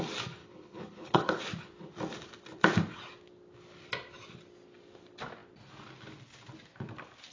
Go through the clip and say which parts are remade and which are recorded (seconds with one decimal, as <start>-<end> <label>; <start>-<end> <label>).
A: 0.0-0.4 recorded; 0.4-1.4 remade; 1.4-7.3 recorded